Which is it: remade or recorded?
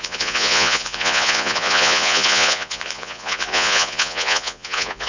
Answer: remade